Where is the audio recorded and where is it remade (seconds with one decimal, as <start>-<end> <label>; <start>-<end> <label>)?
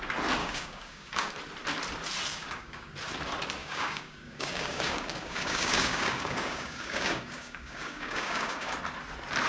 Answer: 0.0-0.4 recorded; 0.4-1.3 remade; 1.3-2.3 recorded; 2.3-2.9 remade; 2.9-3.6 recorded; 3.6-8.7 remade; 8.7-9.5 recorded